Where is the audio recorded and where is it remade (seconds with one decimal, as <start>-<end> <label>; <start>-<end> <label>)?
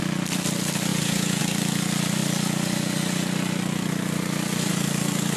0.0-0.9 recorded; 0.9-1.4 remade; 1.4-5.4 recorded